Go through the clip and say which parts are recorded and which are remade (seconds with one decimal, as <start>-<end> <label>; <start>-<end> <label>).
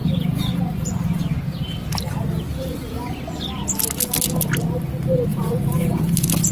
0.0-0.5 remade; 0.5-5.3 recorded; 5.3-6.0 remade; 6.0-6.5 recorded